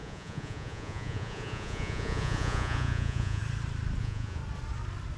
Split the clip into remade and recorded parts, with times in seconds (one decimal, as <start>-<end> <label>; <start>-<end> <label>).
0.0-3.4 remade; 3.4-4.0 recorded; 4.0-4.4 remade; 4.4-5.2 recorded